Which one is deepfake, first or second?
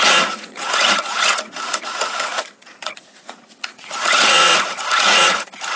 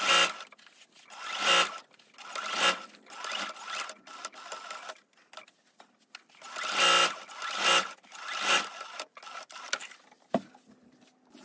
first